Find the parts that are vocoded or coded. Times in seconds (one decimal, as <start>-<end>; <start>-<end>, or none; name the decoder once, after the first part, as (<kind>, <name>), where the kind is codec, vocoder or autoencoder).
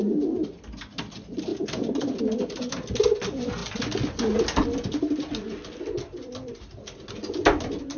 none